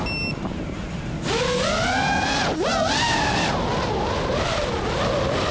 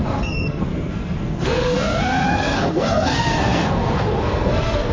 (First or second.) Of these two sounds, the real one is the first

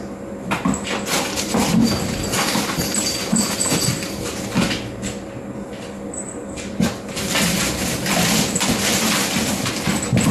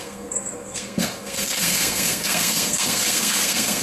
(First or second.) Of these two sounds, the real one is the first